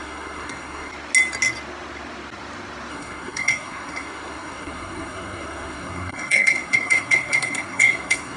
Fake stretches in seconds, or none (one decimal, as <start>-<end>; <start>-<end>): 0.0-0.9; 2.9-8.4

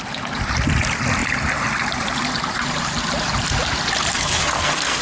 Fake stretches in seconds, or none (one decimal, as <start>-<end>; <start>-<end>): 4.1-5.0